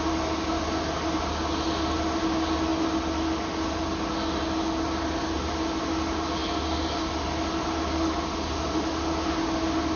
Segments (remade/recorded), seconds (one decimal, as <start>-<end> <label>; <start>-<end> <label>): 0.0-10.0 recorded